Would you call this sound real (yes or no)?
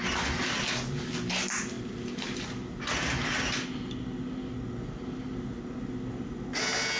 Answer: yes